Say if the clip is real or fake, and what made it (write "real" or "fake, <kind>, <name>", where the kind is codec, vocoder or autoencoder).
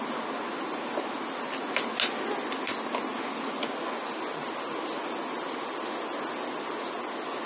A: real